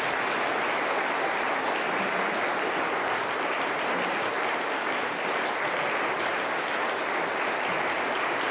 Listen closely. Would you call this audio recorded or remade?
recorded